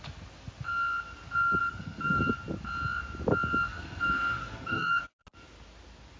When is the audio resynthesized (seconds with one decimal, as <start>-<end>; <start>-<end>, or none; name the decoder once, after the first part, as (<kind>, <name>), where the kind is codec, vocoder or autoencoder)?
1.6-2.2 (codec, SNAC); 3.7-5.0